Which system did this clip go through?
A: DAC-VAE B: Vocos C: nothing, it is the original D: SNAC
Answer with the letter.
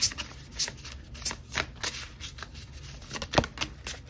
C